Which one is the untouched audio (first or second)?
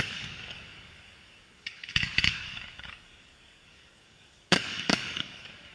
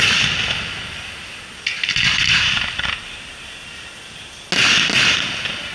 second